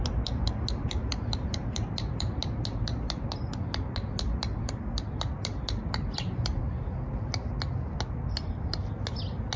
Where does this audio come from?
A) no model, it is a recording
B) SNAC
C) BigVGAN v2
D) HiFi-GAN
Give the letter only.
A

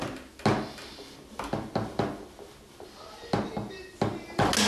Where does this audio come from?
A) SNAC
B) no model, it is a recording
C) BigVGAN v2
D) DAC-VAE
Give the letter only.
B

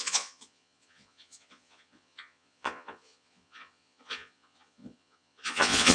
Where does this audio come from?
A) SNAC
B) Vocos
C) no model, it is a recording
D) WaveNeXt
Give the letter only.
B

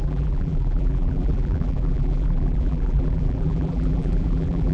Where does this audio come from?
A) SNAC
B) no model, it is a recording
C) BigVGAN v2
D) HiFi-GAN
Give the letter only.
C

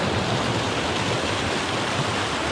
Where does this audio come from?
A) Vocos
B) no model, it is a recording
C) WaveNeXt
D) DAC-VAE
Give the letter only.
B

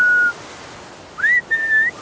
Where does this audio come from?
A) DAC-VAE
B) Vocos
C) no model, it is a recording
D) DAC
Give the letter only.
C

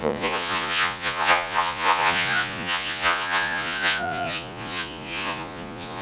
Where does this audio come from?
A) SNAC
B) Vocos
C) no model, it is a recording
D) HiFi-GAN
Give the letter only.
B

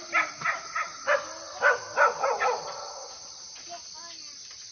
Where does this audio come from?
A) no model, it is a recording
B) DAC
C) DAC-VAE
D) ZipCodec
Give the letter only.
A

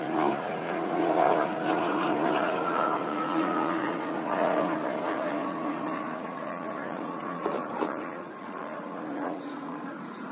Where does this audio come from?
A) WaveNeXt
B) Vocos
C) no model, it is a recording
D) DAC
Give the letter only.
B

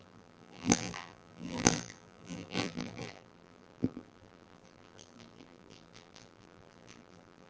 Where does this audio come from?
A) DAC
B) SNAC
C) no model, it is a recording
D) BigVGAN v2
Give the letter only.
D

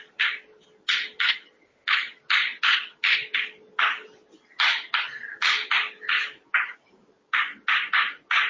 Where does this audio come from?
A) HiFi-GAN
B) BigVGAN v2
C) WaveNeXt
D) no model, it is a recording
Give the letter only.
D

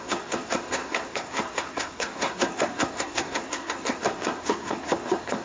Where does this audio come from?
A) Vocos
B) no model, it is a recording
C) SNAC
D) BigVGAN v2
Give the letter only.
C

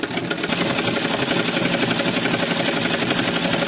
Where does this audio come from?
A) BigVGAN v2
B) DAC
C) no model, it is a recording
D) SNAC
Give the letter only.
C